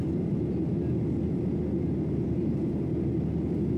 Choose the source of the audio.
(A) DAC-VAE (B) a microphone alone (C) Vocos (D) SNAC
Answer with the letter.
B